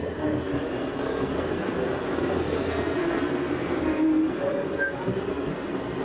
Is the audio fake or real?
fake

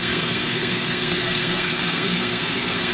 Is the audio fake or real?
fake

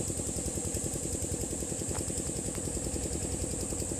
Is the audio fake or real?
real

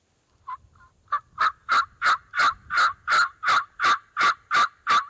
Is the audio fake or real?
real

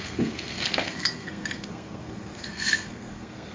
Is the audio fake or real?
fake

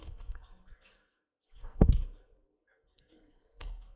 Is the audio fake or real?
fake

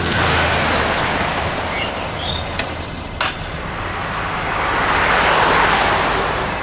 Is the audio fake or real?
real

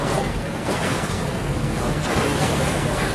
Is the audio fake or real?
fake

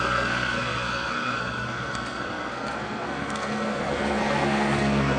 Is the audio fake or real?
fake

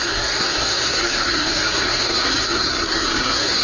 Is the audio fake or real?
fake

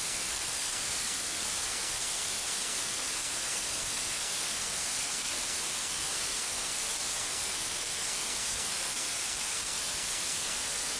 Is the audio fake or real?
fake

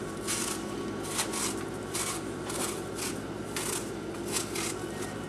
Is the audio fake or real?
real